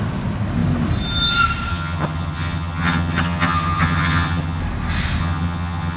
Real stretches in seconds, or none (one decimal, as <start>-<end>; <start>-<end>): 0.0-1.7; 4.6-5.2